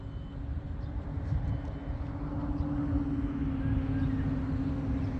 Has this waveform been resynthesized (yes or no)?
no